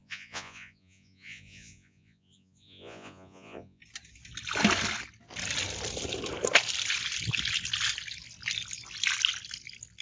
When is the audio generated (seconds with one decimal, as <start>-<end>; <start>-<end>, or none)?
0.0-3.8